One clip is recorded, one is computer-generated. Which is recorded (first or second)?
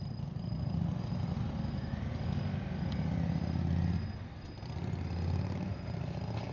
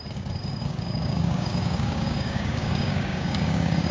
first